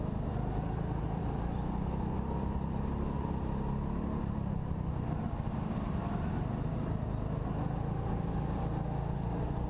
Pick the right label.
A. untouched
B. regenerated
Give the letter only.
A